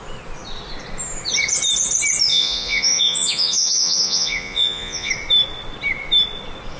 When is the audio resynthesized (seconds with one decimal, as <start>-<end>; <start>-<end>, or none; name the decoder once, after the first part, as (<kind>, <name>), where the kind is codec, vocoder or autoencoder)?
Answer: 2.3-5.1 (vocoder, Vocos)